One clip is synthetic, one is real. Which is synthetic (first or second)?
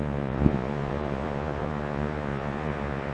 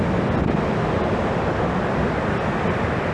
first